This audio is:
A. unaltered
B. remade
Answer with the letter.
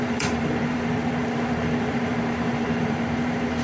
B